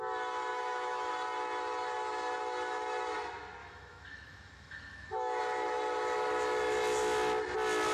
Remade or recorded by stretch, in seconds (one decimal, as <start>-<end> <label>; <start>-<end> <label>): 0.0-0.5 recorded; 0.5-1.1 remade; 1.1-3.6 recorded; 3.6-5.4 remade; 5.4-7.9 recorded